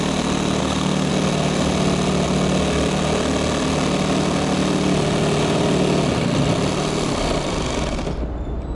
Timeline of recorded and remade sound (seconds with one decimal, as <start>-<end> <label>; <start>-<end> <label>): 0.0-0.6 recorded; 0.6-1.1 remade; 1.1-8.7 recorded

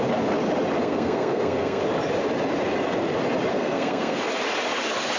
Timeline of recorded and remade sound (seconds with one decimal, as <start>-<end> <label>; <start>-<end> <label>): 0.0-0.8 recorded; 0.8-1.8 remade; 1.8-3.5 recorded; 3.5-4.2 remade; 4.2-5.2 recorded

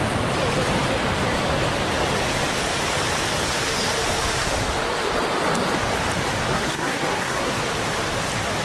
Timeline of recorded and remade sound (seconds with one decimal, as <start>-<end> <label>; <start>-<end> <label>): 0.0-6.5 recorded; 6.5-7.6 remade; 7.6-8.6 recorded

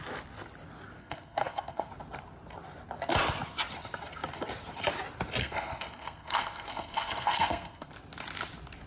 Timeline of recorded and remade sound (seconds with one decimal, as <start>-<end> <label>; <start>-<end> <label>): 0.0-1.0 recorded; 1.0-1.9 remade; 1.9-5.4 recorded; 5.4-7.9 remade; 7.9-8.9 recorded

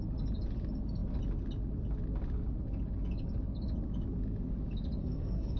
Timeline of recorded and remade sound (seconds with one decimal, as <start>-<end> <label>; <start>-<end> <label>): 0.0-5.0 recorded; 5.0-5.6 remade

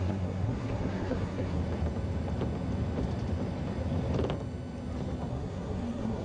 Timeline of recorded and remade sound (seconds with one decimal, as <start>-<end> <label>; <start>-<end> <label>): 0.0-1.6 remade; 1.6-5.3 recorded; 5.3-6.2 remade

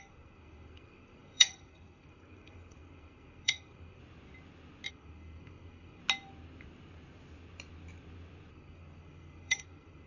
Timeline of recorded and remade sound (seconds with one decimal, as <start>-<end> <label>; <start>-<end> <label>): 0.0-4.0 remade; 4.0-4.9 recorded; 4.9-6.0 remade; 6.0-8.5 recorded; 8.5-10.1 remade